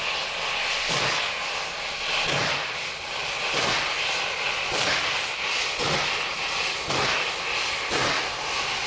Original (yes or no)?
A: yes